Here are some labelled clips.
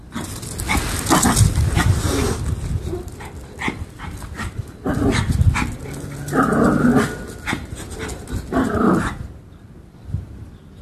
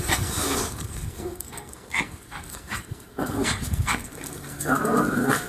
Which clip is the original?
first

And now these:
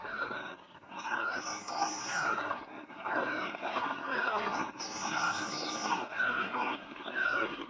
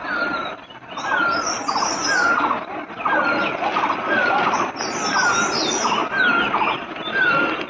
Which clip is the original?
second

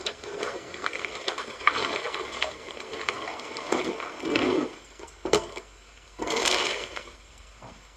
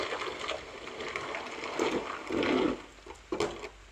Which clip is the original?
second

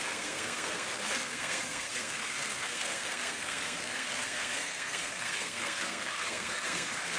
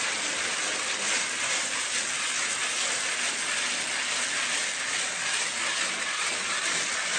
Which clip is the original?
second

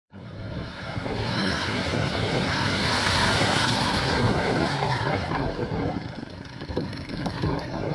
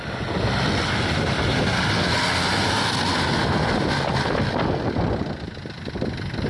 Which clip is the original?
second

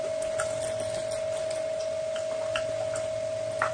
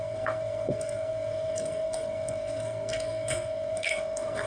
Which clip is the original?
first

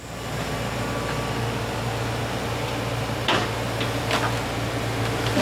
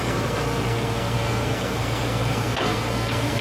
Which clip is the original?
first